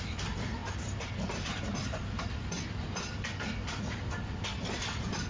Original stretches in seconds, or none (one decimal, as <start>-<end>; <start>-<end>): 0.0-5.3